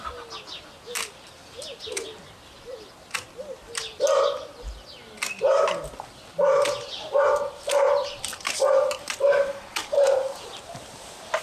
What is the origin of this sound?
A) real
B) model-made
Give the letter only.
A